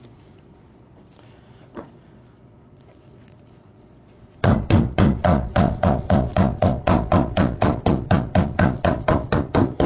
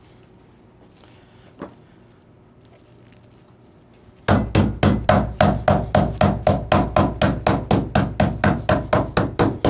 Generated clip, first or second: first